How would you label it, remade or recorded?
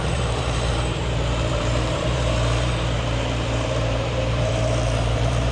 remade